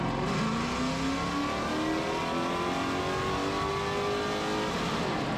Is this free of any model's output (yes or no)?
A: yes